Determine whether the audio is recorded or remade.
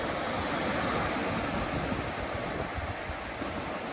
recorded